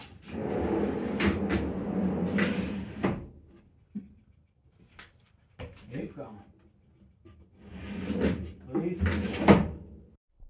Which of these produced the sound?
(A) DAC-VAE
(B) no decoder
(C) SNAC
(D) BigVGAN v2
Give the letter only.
B